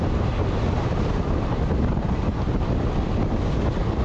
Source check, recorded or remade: recorded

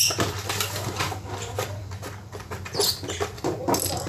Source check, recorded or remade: recorded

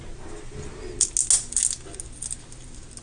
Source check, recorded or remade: recorded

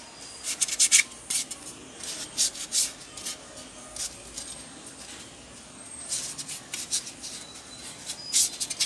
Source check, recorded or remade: recorded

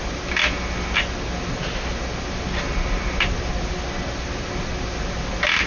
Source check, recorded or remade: recorded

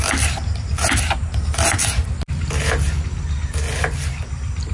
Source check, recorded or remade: recorded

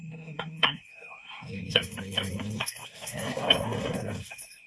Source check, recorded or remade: remade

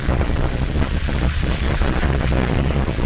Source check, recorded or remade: remade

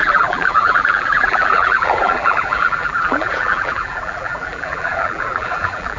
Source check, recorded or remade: remade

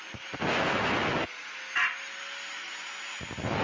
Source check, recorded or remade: recorded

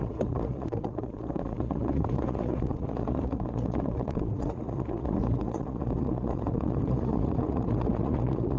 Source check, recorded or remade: remade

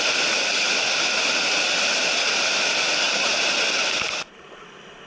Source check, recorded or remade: recorded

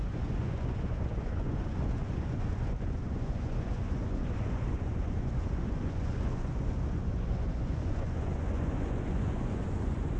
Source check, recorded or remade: remade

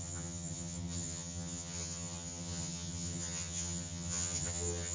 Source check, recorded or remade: remade